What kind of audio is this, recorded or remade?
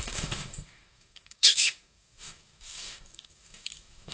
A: remade